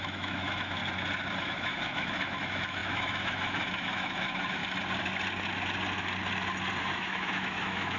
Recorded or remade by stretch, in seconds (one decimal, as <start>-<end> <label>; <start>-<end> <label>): 0.0-0.8 remade; 0.8-1.4 recorded; 1.4-4.6 remade; 4.6-6.8 recorded; 6.8-8.0 remade